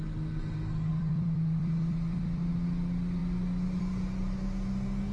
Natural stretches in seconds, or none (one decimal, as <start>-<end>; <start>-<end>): 0.0-0.9; 2.5-5.1